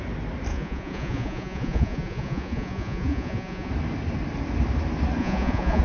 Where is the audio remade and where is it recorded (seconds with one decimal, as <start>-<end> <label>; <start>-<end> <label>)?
0.0-0.5 recorded; 0.5-3.7 remade; 3.7-5.2 recorded; 5.2-5.8 remade